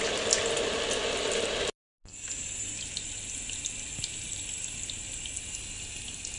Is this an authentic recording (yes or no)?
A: yes